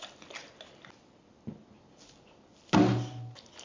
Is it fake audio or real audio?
real